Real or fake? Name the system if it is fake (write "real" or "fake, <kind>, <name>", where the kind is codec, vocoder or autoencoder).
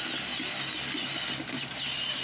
real